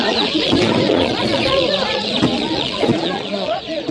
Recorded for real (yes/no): no